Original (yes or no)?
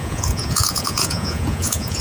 no